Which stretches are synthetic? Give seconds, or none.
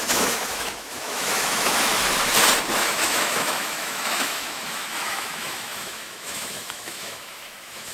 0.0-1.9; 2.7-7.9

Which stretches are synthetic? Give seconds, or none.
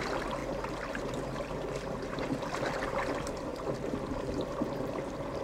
none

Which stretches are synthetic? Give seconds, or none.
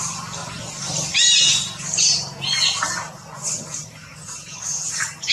none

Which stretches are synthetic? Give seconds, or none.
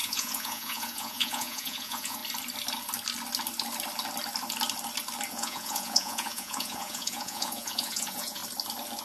0.0-2.2; 5.3-8.4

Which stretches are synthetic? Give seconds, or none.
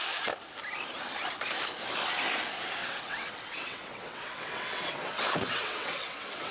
2.8-6.5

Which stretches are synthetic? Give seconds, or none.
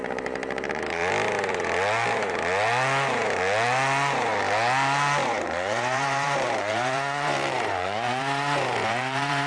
0.0-1.0; 5.4-9.5